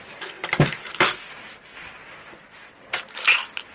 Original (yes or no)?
yes